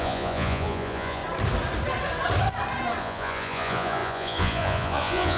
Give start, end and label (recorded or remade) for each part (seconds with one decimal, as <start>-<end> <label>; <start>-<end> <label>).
0.0-1.2 remade; 1.2-3.0 recorded; 3.0-5.4 remade